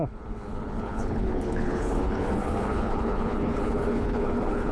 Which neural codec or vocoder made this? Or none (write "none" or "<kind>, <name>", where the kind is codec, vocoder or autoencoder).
codec, HILCodec